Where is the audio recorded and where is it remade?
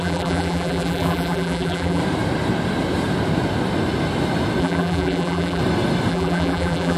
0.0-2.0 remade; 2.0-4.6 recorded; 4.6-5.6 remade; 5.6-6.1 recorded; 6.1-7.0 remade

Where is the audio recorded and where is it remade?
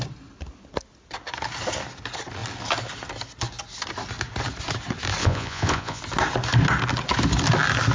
0.0-5.2 recorded; 5.2-6.0 remade; 6.0-7.9 recorded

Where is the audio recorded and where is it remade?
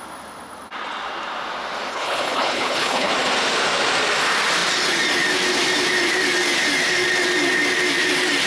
0.0-1.9 recorded; 1.9-3.1 remade; 3.1-8.5 recorded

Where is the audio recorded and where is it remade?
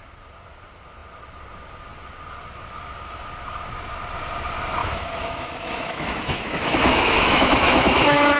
0.0-4.8 recorded; 4.8-8.4 remade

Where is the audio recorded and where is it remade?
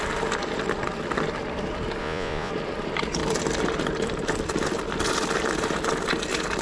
0.0-2.0 recorded; 2.0-2.5 remade; 2.5-6.6 recorded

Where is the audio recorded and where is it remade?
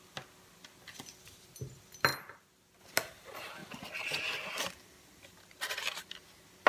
0.0-6.7 recorded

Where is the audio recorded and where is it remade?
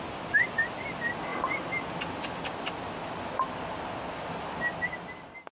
0.0-5.5 recorded